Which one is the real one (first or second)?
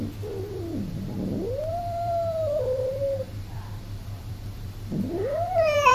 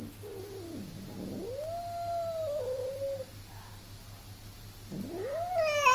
second